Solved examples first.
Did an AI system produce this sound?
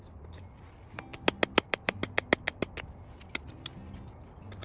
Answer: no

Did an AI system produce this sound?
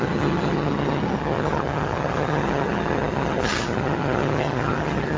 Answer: yes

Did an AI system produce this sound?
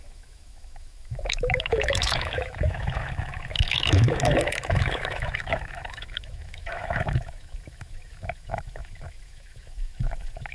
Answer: yes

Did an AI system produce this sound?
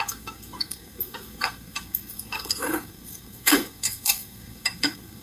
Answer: yes